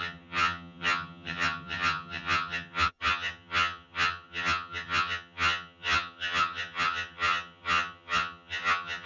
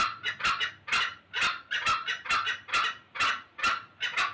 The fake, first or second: first